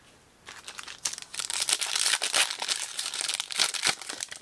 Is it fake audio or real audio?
real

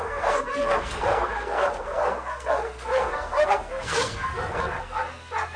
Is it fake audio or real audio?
fake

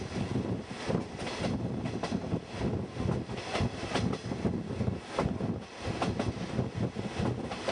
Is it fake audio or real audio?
real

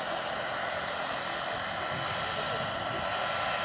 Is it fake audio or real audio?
real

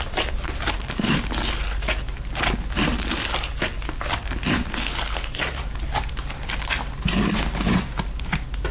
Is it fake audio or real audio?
real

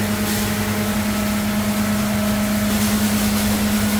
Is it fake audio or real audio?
real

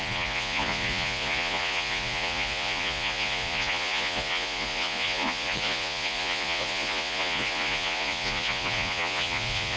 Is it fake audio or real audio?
fake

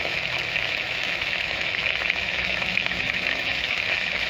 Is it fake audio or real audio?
fake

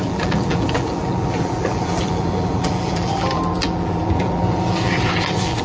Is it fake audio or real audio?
fake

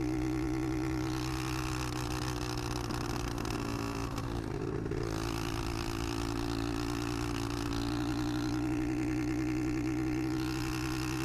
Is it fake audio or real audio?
real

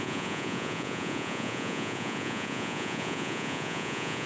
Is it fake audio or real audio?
fake